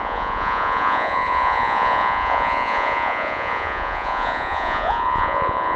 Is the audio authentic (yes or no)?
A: no